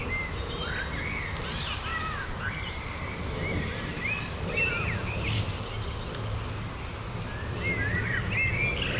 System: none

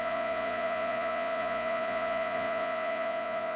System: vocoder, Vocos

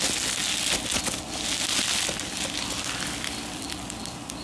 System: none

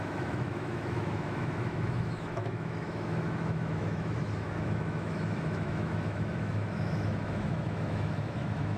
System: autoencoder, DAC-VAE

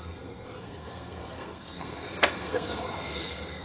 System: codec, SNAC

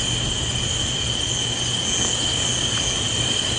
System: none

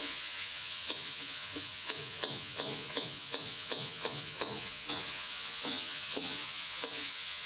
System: vocoder, Vocos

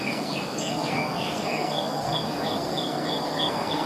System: codec, SNAC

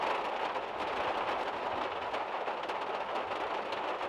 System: none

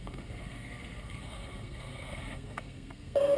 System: codec, SNAC